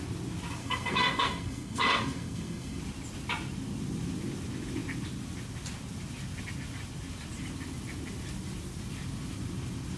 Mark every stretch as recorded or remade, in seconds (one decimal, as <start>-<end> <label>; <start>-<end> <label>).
0.0-0.6 recorded; 0.6-2.8 remade; 2.8-10.0 recorded